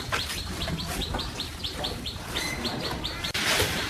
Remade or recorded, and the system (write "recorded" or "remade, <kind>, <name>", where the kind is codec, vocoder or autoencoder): recorded